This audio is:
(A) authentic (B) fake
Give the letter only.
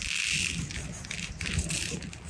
A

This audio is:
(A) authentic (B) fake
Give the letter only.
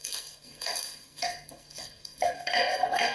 B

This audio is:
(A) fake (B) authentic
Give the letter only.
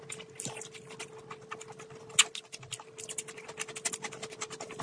B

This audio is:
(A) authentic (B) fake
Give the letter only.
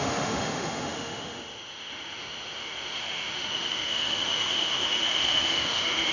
B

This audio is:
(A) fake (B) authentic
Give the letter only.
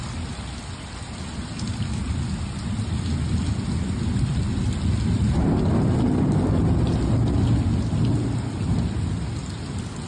B